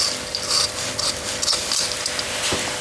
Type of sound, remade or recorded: recorded